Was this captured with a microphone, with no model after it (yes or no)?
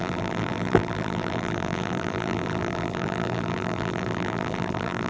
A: no